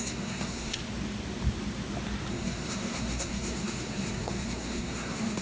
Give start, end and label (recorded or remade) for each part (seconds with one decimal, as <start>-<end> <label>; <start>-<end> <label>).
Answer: 0.0-0.8 remade; 0.8-2.3 recorded; 2.3-5.4 remade